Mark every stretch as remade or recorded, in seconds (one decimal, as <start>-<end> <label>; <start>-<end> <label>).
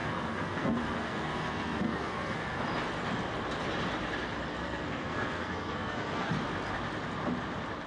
0.0-2.6 remade; 2.6-4.5 recorded; 4.5-6.3 remade; 6.3-7.9 recorded